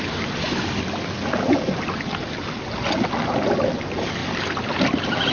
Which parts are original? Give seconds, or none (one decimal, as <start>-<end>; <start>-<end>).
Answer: 0.0-5.3